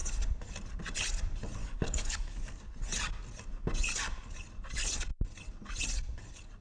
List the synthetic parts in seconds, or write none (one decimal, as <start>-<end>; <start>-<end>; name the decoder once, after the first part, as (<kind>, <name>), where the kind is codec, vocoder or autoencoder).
1.6-2.7 (codec, DAC)